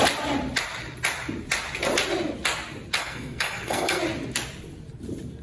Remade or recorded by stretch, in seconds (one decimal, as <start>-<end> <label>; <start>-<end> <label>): 0.0-3.0 recorded; 3.0-4.0 remade; 4.0-5.4 recorded